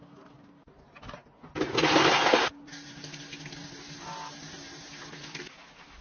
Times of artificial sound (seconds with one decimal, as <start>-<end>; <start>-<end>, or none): none